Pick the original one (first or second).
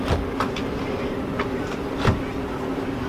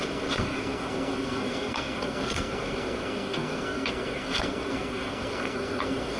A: first